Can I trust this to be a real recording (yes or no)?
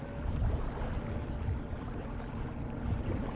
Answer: no